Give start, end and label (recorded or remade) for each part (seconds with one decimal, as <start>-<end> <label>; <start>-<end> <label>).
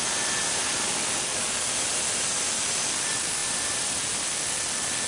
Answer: 0.0-5.1 recorded